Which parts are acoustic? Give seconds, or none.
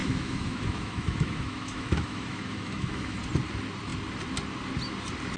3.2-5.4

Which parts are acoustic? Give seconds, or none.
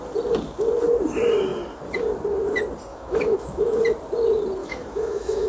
0.0-2.9; 3.8-4.6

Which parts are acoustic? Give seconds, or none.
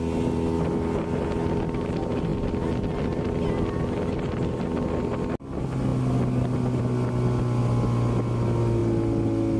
0.0-9.6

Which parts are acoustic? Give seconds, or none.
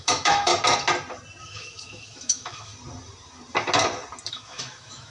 0.5-1.4; 2.7-4.3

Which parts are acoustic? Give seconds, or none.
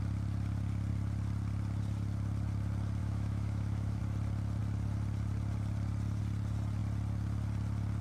0.0-3.0; 4.0-8.0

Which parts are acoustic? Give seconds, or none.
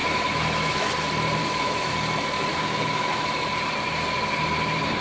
0.9-1.4; 1.9-2.5; 3.5-5.0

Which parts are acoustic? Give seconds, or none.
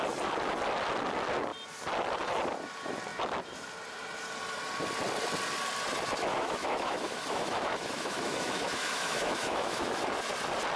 0.0-6.3; 10.0-10.8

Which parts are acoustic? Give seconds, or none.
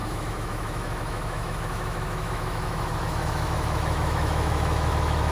none